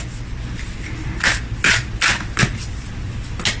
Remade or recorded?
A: recorded